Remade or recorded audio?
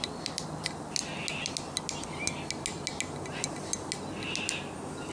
recorded